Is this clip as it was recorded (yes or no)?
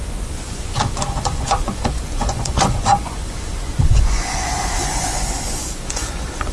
no